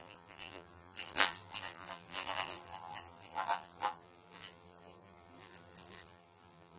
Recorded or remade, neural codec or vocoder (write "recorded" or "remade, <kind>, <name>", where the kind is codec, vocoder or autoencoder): remade, vocoder, BigVGAN v2